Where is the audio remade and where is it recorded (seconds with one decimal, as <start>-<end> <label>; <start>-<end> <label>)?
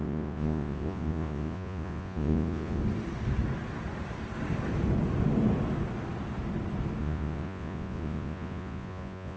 0.0-2.8 remade; 2.8-7.0 recorded; 7.0-9.4 remade